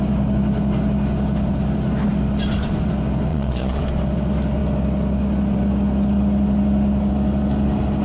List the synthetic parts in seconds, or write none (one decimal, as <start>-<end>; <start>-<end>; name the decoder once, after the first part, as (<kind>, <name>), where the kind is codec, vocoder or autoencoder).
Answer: 3.3-3.8 (vocoder, Vocos)